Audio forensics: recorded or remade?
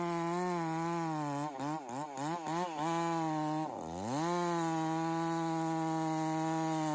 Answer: recorded